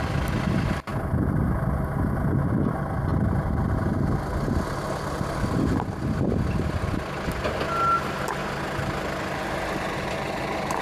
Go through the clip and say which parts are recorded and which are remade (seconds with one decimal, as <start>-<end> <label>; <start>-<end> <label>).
0.0-10.8 recorded